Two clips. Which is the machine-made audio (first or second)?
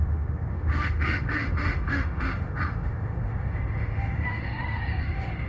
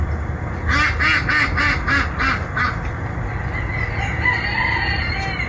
first